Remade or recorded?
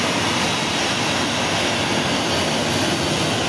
recorded